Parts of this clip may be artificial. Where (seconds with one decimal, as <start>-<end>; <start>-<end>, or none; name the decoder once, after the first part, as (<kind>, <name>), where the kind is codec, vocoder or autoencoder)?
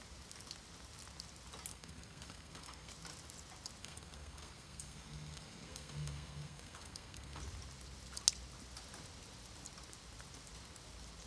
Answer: 1.7-2.9 (codec, SNAC); 3.8-7.4